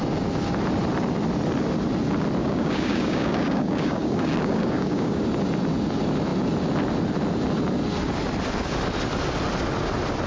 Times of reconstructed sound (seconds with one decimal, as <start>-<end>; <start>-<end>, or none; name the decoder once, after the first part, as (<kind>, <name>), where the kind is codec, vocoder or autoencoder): 2.4-5.2 (codec, DAC)